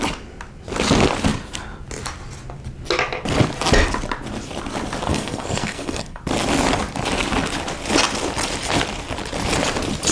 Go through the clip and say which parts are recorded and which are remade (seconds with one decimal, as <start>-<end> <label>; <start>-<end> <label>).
0.0-5.1 recorded; 5.1-6.2 remade; 6.2-10.1 recorded